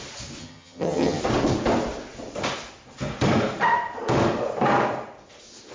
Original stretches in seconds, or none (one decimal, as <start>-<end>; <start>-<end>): 0.0-0.4; 1.2-5.7